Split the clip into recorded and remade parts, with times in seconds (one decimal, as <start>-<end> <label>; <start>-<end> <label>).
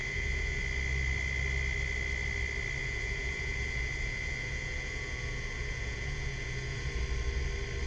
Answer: 0.0-0.6 remade; 0.6-2.8 recorded; 2.8-7.0 remade; 7.0-7.9 recorded